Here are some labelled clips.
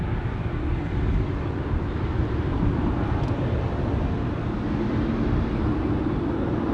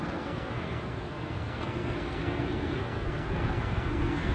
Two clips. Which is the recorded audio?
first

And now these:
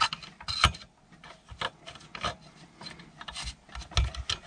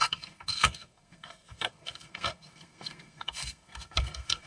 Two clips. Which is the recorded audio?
first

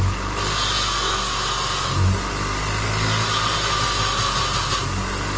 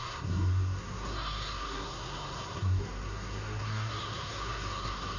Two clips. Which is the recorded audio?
first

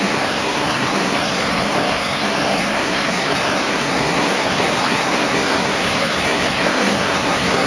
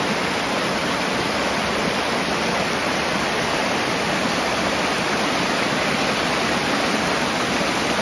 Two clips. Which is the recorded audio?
second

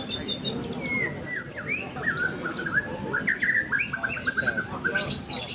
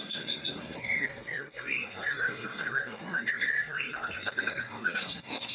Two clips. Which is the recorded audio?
first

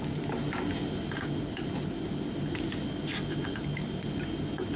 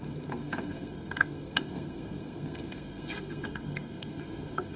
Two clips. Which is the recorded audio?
first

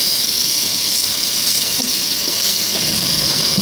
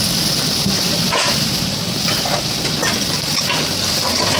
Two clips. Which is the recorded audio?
second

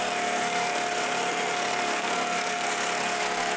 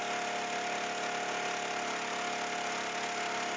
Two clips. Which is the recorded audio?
second